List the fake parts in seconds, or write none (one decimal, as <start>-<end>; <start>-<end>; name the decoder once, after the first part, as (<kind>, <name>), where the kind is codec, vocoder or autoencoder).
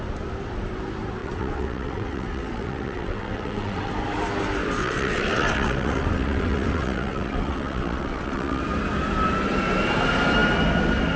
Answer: 1.2-3.9 (vocoder, WaveNeXt); 4.8-8.6